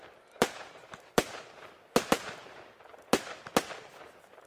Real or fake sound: fake